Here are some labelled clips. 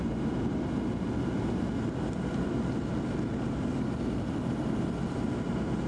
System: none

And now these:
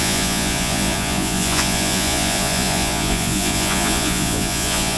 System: vocoder, Vocos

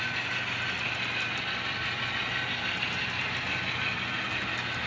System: none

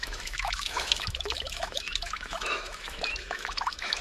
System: autoencoder, DAC-VAE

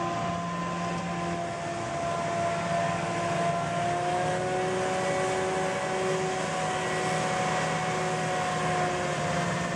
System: none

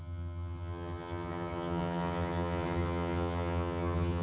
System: vocoder, HiFi-GAN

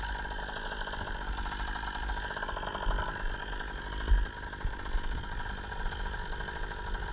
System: none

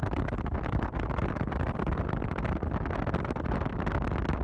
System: none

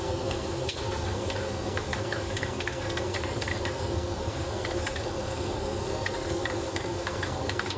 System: codec, SNAC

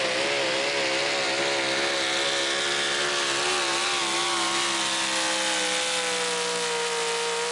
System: none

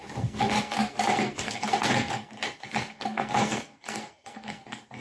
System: codec, SNAC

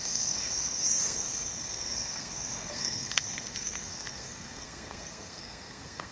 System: codec, SNAC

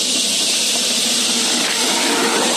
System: none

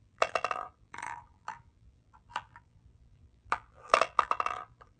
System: vocoder, BigVGAN v2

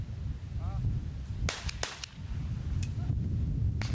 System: none